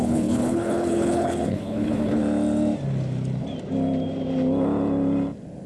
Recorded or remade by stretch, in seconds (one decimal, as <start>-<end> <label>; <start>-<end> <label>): 0.0-2.2 remade; 2.2-5.7 recorded